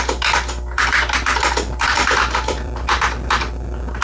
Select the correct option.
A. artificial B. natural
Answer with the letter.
A